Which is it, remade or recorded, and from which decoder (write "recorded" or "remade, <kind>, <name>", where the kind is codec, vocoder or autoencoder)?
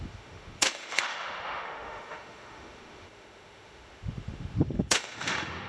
remade, autoencoder, DAC-VAE